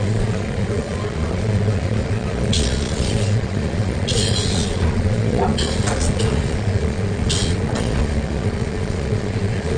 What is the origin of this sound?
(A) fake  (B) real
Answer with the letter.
A